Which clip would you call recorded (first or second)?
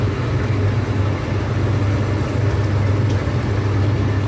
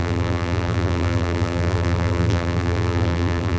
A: first